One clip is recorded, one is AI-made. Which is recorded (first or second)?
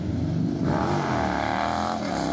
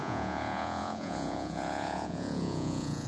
first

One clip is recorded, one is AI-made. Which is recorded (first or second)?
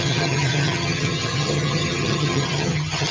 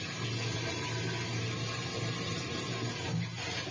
second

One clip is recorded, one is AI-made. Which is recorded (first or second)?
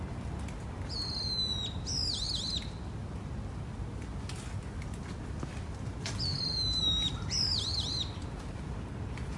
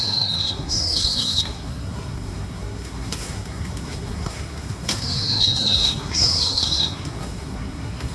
first